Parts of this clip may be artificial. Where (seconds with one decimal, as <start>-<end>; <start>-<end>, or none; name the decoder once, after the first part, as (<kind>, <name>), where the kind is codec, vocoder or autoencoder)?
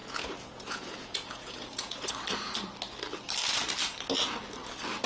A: 0.0-2.1 (vocoder, Vocos)